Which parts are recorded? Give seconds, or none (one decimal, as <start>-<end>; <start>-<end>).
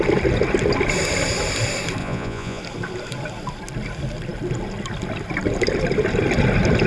0.0-2.0; 2.6-6.9